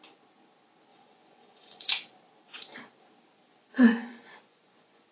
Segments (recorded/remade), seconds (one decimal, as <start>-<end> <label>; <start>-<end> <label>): 0.0-0.9 recorded; 0.9-1.9 remade; 1.9-3.5 recorded; 3.5-5.1 remade